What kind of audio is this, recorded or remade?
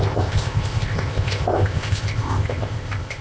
remade